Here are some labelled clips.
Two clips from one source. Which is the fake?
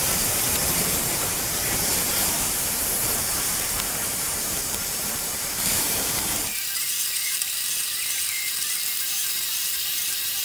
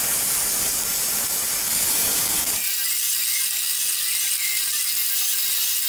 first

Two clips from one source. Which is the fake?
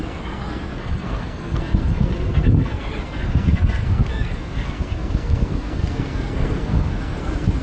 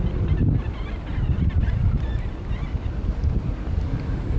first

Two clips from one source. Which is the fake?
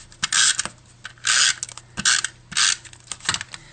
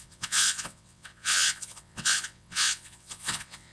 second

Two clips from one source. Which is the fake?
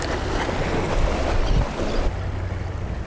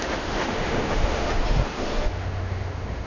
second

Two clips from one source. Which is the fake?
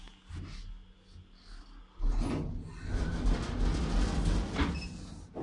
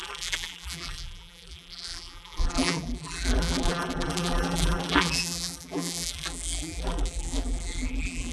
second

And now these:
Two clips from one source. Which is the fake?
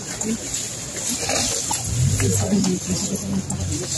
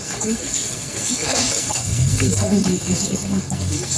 second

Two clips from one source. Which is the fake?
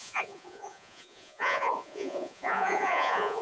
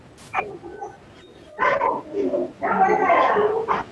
first